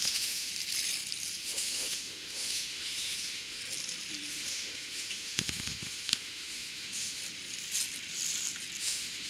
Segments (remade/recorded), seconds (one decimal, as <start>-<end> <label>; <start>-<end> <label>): 0.0-0.5 remade; 0.5-1.4 recorded; 1.4-3.6 remade; 3.6-4.3 recorded; 4.3-7.2 remade; 7.2-8.8 recorded; 8.8-9.3 remade